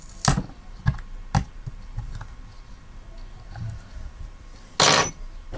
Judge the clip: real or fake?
real